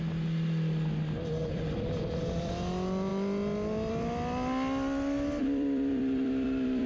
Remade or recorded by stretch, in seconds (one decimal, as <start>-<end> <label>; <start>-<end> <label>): 0.0-1.4 recorded; 1.4-2.5 remade; 2.5-5.4 recorded; 5.4-6.9 remade